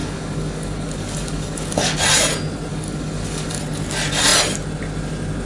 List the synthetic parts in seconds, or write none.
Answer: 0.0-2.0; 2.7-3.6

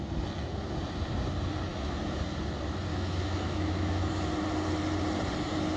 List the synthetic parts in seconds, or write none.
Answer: 1.7-2.2; 2.9-4.1

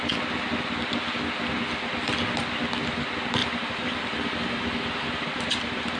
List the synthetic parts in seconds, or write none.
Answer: 3.4-6.0

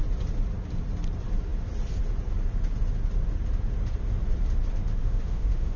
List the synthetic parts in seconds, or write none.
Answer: 5.0-5.8

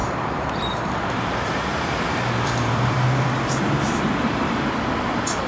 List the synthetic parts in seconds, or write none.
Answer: 0.0-3.3

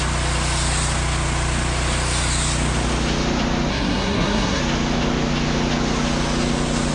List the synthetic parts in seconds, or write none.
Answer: 3.7-4.6

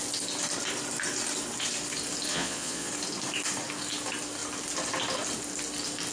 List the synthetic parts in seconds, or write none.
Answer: 2.3-2.9